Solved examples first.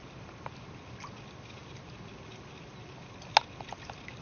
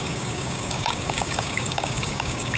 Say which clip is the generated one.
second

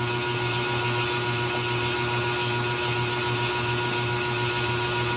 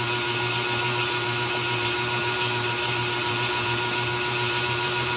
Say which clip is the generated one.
second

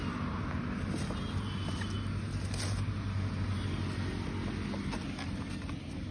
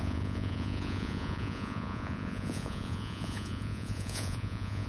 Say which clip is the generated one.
second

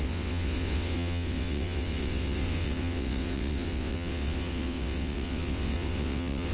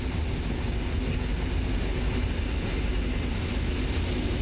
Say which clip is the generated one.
first